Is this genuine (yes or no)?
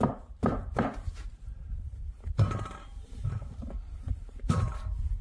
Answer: no